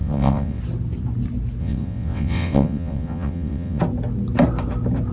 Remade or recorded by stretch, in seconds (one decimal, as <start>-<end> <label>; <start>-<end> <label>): 0.0-0.6 remade; 0.6-1.6 recorded; 1.6-3.8 remade; 3.8-5.1 recorded